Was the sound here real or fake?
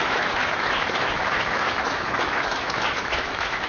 fake